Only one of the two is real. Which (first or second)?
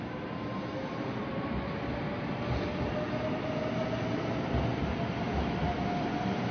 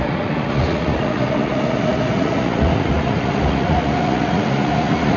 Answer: first